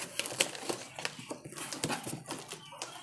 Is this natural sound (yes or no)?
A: yes